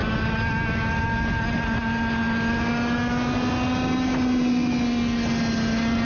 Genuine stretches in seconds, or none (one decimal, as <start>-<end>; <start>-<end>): 0.0-6.0